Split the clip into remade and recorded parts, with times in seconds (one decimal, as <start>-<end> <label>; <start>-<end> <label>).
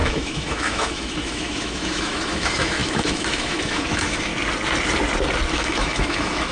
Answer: 0.0-4.3 remade; 4.3-5.5 recorded; 5.5-6.5 remade